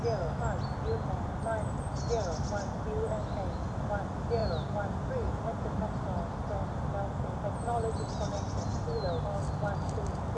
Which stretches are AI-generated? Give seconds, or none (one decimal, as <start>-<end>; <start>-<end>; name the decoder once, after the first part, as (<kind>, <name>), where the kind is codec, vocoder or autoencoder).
none